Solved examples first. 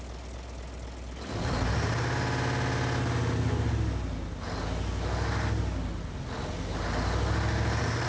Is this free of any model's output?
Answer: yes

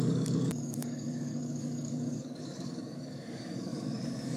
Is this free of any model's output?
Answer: no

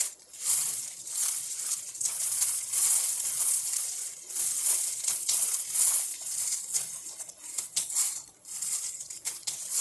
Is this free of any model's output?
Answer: no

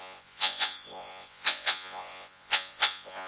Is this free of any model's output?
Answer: no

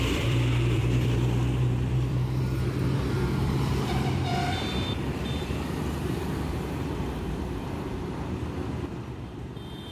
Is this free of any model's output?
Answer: no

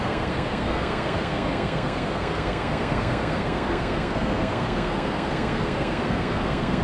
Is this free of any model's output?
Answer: no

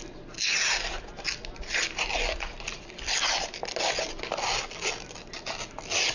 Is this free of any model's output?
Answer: yes